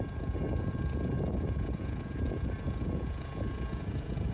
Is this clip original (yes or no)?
no